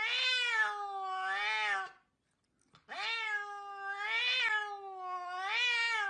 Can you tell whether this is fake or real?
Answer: real